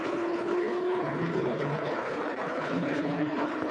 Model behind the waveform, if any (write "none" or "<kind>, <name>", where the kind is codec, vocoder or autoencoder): codec, HILCodec